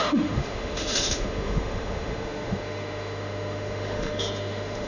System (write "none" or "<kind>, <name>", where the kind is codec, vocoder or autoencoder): autoencoder, DAC-VAE